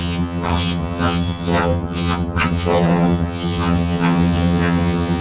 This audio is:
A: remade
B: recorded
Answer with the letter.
A